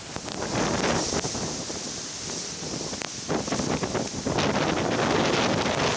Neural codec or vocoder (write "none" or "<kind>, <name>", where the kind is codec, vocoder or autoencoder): none